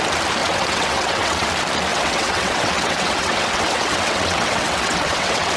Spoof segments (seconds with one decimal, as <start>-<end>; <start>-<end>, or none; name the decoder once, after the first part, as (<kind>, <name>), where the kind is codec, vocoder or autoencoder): 0.4-1.5 (vocoder, WaveNeXt); 1.9-5.6